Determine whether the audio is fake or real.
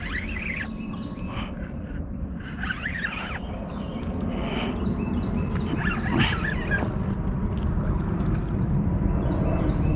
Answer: real